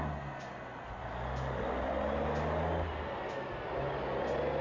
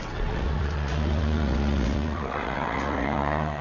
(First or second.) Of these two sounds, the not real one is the second